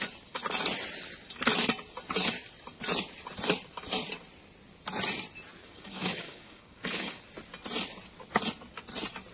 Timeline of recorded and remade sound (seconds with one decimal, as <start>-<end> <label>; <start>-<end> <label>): 0.0-5.6 recorded; 5.6-7.2 remade; 7.2-9.3 recorded